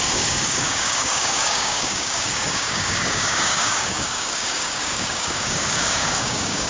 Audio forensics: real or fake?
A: fake